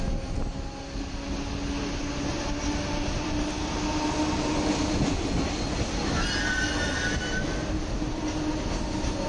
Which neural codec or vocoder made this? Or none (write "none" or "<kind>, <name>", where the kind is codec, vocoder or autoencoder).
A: none